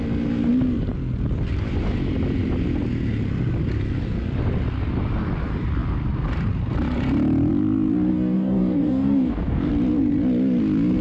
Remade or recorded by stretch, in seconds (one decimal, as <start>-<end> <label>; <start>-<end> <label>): 0.0-8.1 recorded; 8.1-9.7 remade; 9.7-11.0 recorded